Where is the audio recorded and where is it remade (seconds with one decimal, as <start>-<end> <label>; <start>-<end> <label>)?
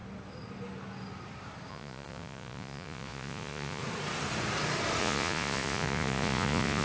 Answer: 0.0-1.7 recorded; 1.7-3.8 remade; 3.8-5.0 recorded; 5.0-6.8 remade